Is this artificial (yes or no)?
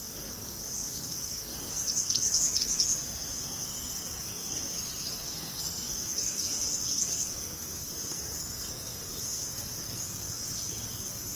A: yes